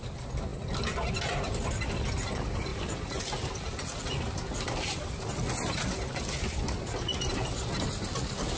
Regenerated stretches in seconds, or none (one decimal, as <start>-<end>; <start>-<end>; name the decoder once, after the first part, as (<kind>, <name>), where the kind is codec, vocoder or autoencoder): none